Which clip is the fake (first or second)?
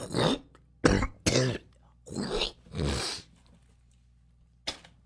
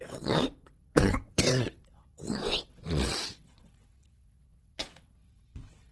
second